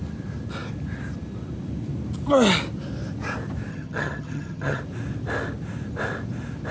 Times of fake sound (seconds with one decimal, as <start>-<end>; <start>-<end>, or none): 3.7-4.8